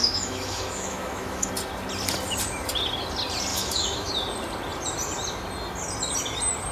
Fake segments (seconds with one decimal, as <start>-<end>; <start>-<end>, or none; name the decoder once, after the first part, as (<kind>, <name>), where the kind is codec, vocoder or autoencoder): 0.0-1.5 (autoencoder, DAC-VAE); 3.5-4.1